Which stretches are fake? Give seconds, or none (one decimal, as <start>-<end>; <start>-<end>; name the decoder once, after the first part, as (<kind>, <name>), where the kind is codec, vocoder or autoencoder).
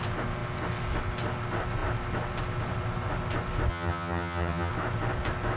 3.7-4.7 (vocoder, HiFi-GAN)